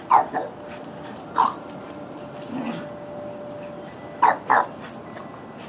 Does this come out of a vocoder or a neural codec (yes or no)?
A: no